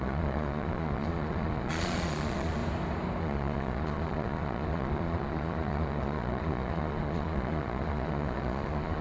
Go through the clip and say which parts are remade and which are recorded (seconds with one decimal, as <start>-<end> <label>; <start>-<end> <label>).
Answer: 0.0-2.6 remade; 2.6-3.2 recorded; 3.2-9.0 remade